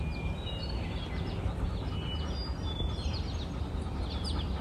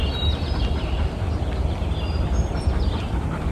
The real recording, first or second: first